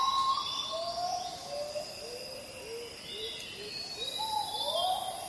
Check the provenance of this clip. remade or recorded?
recorded